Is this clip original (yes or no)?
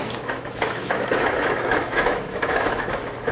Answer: no